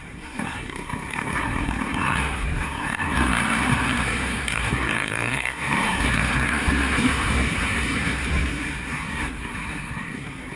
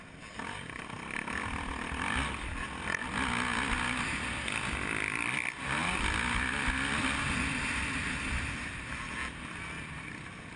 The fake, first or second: first